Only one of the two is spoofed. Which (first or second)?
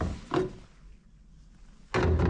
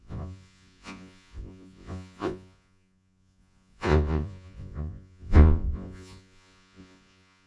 second